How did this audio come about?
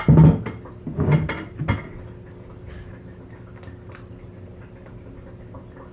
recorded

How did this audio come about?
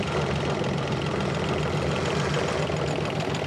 recorded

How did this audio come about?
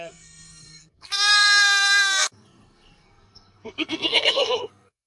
remade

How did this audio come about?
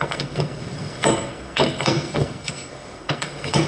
remade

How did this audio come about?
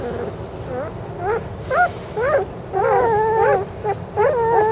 recorded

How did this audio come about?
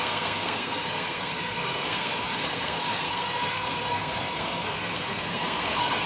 remade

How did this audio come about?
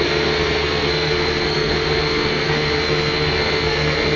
remade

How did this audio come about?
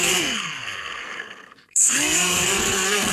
remade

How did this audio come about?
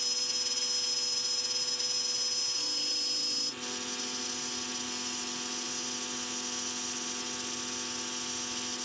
recorded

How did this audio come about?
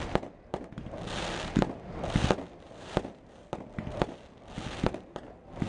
recorded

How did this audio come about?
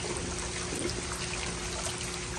recorded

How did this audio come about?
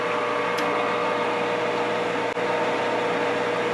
recorded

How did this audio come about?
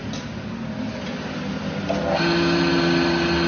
recorded